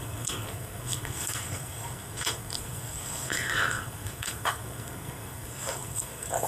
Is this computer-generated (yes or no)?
yes